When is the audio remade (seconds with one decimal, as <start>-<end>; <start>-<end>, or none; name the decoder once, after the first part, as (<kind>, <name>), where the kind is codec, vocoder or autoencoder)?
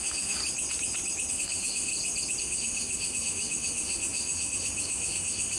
0.0-0.4 (autoencoder, DAC-VAE); 1.3-1.9; 2.4-5.6